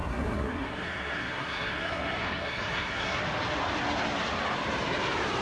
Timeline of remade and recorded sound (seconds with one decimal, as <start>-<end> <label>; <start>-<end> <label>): 0.0-3.2 remade; 3.2-5.4 recorded